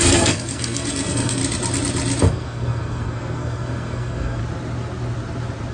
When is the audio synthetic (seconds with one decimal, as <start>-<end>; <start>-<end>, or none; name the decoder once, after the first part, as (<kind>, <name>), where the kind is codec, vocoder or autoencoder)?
0.0-1.4 (codec, SNAC); 2.2-4.4